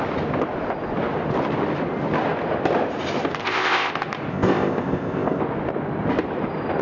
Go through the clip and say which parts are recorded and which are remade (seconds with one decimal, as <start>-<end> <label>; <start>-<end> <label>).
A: 0.0-3.4 recorded; 3.4-3.9 remade; 3.9-4.3 recorded; 4.3-5.4 remade; 5.4-6.8 recorded